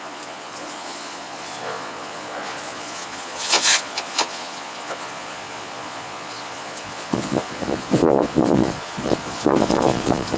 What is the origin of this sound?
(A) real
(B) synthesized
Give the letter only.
B